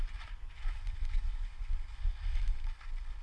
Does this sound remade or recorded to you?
recorded